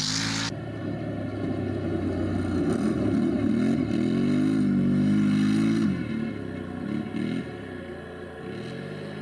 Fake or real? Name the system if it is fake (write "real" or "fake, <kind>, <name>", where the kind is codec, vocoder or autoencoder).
real